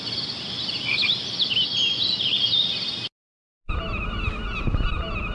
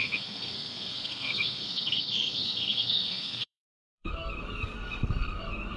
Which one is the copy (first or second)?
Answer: second